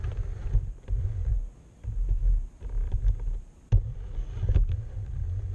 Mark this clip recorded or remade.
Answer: recorded